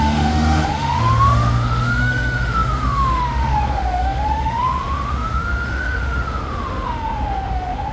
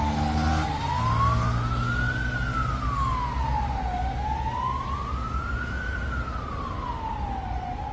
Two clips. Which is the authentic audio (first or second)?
second